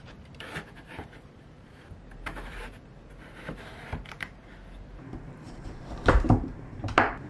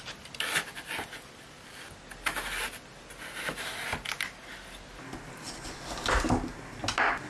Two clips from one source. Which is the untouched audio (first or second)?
second